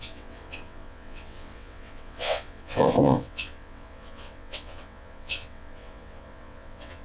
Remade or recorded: remade